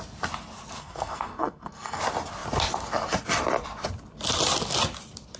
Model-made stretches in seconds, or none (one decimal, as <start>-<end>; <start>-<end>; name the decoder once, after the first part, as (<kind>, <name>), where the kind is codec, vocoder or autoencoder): 0.8-2.0 (codec, SNAC)